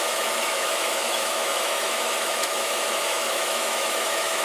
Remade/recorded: remade